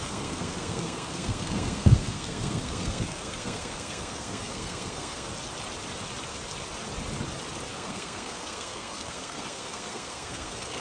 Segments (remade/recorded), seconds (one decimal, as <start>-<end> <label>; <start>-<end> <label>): 0.0-5.3 remade; 5.3-7.7 recorded; 7.7-10.8 remade